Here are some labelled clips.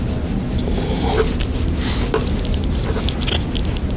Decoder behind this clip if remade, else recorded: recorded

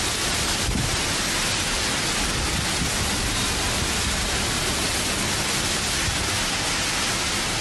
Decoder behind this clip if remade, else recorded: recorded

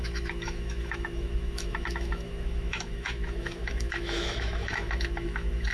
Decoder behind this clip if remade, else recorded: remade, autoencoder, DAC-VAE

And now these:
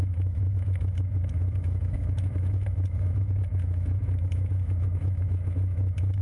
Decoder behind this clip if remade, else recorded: remade, autoencoder, DAC-VAE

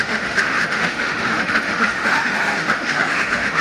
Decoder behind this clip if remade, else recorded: remade, autoencoder, DAC-VAE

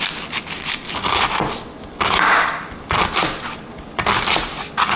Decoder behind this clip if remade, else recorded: recorded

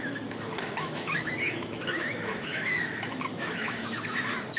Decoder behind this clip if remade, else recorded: remade, autoencoder, DAC-VAE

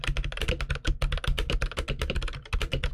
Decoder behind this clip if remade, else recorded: recorded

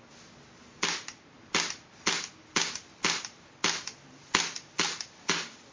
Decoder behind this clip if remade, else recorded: recorded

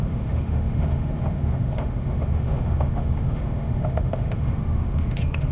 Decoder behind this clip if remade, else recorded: remade, autoencoder, DAC-VAE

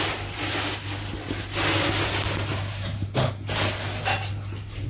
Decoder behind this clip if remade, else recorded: recorded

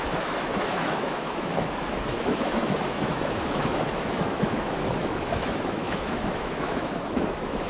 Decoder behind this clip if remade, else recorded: remade, autoencoder, DAC-VAE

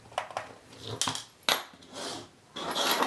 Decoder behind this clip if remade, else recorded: recorded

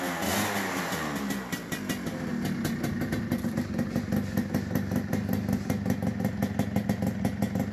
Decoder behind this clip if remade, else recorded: recorded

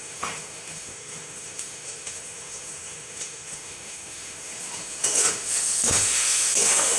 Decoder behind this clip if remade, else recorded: remade, autoencoder, DAC-VAE